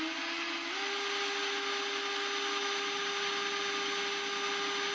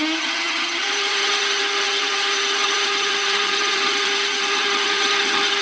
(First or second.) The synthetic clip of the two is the second